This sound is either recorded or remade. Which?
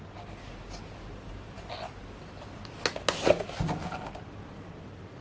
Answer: recorded